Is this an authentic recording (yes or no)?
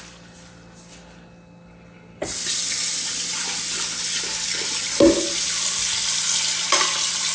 yes